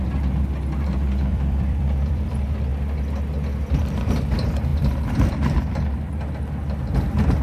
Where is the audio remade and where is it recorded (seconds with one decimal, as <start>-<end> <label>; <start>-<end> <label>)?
0.0-1.3 recorded; 1.3-2.3 remade; 2.3-4.7 recorded; 4.7-6.3 remade; 6.3-7.4 recorded